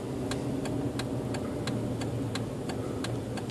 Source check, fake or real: real